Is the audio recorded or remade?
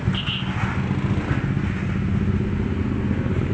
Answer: recorded